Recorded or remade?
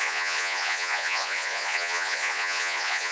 remade